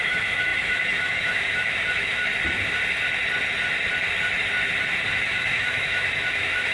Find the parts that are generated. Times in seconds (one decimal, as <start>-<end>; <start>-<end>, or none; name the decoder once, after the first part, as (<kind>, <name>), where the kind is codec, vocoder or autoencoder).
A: 0.0-2.3 (autoencoder, DAC-VAE); 5.1-6.7